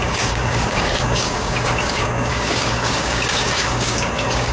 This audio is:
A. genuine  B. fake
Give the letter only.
B